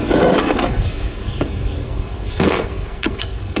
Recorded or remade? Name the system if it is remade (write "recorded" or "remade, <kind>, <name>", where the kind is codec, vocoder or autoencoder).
remade, codec, SNAC